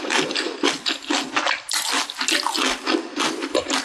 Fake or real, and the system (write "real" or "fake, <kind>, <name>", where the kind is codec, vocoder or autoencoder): real